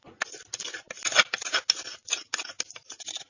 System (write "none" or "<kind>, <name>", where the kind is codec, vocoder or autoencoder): none